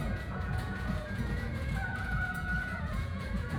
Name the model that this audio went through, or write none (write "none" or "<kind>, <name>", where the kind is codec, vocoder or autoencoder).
vocoder, Vocos